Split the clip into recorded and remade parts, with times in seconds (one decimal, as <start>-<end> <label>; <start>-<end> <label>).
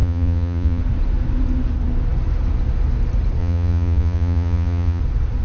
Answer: 0.0-0.8 remade; 0.8-3.4 recorded; 3.4-5.0 remade; 5.0-5.4 recorded